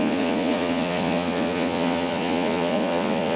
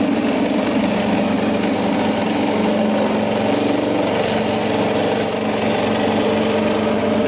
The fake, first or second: first